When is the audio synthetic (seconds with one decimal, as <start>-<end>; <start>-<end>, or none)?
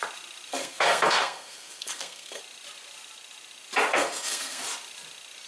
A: 0.5-2.4; 3.9-4.6